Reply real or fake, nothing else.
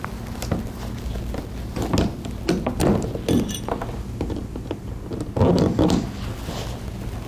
real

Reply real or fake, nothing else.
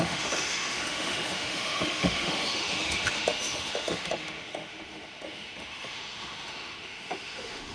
fake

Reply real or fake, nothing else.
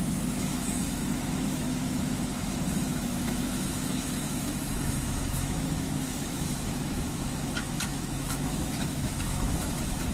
fake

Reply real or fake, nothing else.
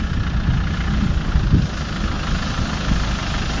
real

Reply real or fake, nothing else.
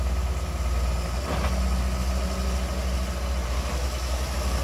real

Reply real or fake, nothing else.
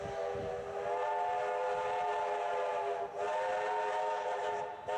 real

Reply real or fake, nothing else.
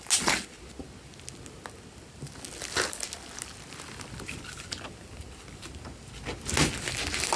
real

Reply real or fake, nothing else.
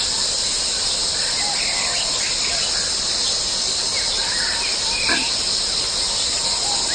real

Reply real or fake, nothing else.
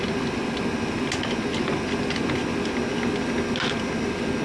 real